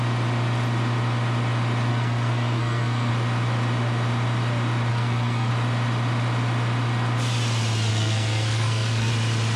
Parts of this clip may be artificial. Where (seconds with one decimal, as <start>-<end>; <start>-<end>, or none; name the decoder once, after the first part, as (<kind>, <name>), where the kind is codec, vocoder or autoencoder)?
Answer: 1.9-3.1 (codec, SNAC); 4.9-5.5; 7.9-9.1